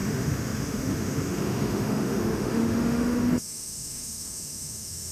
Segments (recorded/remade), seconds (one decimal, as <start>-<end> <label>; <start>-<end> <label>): 0.0-5.1 remade